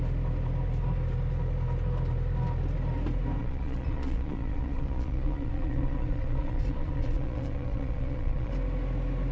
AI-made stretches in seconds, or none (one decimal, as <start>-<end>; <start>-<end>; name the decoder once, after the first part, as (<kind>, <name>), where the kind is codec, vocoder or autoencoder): 3.4-8.5 (vocoder, Vocos)